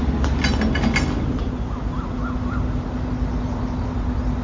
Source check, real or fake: real